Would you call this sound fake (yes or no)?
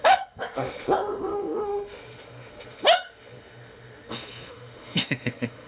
yes